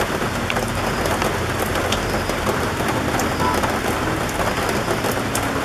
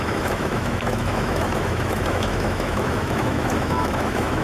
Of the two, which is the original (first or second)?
first